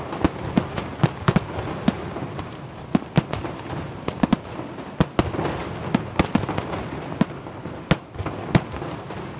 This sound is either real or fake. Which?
real